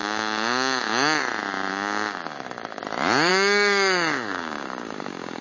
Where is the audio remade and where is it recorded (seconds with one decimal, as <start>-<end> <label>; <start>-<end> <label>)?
0.0-1.2 remade; 1.2-1.7 recorded; 1.7-2.8 remade; 2.8-3.3 recorded; 3.3-5.4 remade